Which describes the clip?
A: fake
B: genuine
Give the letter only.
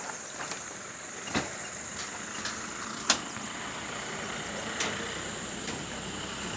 B